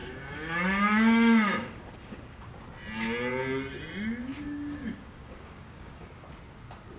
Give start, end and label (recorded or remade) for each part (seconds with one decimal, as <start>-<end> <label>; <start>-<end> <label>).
0.0-2.5 remade; 2.5-4.4 recorded; 4.4-6.0 remade; 6.0-7.0 recorded